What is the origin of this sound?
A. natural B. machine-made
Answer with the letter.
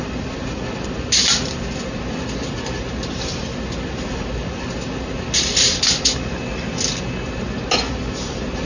A